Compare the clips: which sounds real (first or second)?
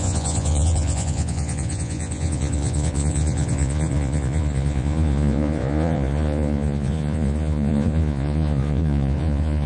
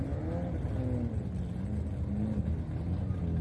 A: second